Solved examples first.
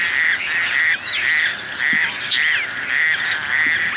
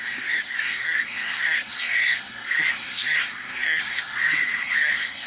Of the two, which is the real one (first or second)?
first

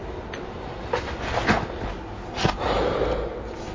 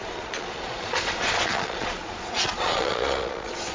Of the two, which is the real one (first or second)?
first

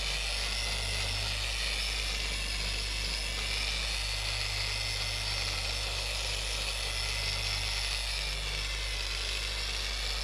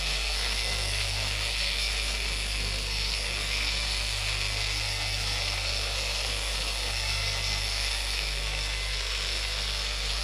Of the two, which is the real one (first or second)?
first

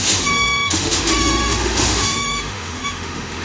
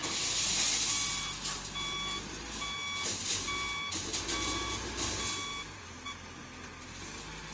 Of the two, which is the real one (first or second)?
second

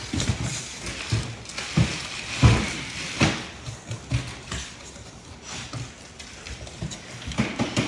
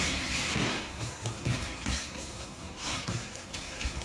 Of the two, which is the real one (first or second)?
first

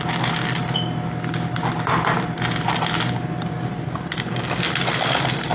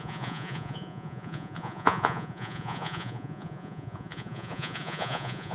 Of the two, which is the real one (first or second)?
first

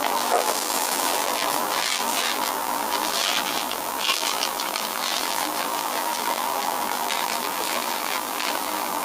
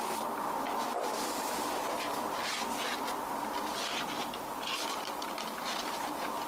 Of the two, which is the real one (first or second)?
second